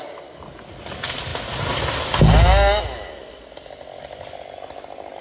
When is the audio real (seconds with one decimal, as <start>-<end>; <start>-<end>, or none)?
0.0-5.2